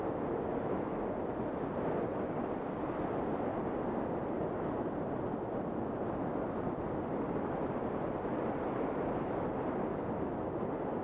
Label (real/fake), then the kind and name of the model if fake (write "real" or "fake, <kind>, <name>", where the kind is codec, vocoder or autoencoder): real